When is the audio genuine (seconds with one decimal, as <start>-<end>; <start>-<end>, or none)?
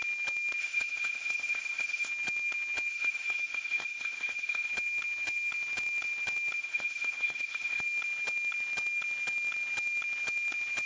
0.0-0.6; 2.1-2.9; 4.7-6.6; 7.8-10.9